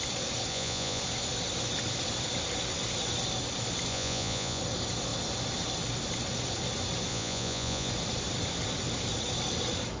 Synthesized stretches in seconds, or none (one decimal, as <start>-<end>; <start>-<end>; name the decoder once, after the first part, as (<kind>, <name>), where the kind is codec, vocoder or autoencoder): 0.5-1.0 (vocoder, Vocos); 3.9-4.6; 7.1-7.9